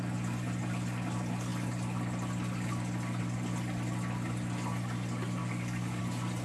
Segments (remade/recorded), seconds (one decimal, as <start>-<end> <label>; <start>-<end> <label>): 0.0-5.4 recorded; 5.4-6.0 remade; 6.0-6.4 recorded